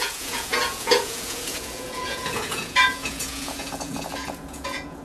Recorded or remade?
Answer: remade